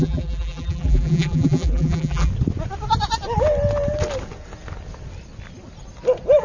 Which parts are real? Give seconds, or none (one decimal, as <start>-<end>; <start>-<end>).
2.3-6.4